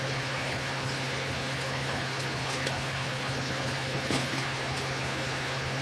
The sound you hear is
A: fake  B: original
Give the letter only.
A